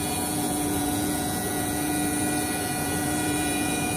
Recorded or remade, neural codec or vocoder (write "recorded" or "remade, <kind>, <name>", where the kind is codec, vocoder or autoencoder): remade, vocoder, Vocos